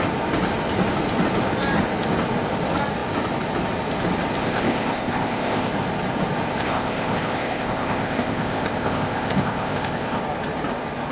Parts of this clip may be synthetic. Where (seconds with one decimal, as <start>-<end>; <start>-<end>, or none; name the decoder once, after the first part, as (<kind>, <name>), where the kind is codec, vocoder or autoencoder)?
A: 4.4-5.7 (codec, ZipCodec); 6.6-10.2